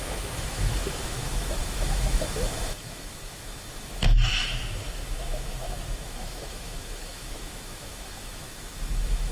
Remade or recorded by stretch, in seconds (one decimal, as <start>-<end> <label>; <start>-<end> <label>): 0.0-9.3 remade